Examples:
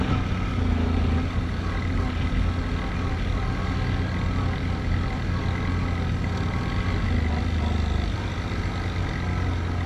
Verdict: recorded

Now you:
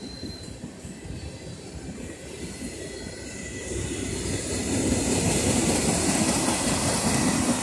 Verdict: remade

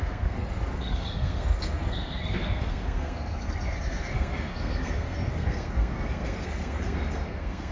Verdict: remade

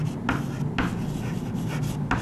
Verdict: recorded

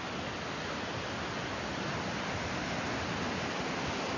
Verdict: recorded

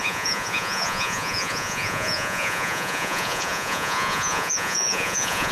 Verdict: remade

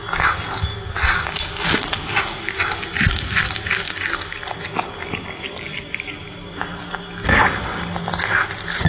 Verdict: recorded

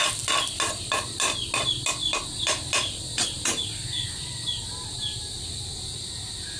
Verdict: recorded